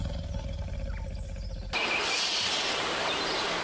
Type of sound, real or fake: real